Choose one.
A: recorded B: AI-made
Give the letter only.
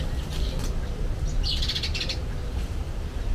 A